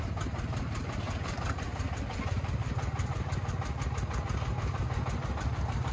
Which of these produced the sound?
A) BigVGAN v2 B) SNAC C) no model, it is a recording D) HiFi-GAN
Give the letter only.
C